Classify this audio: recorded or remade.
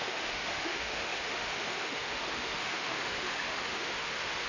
remade